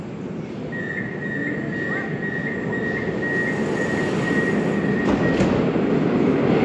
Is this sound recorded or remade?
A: recorded